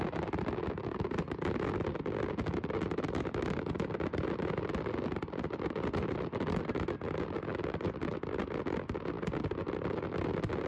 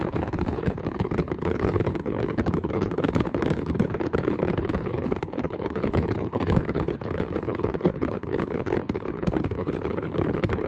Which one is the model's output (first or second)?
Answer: second